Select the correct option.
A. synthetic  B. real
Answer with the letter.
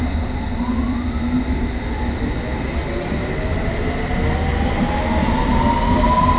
B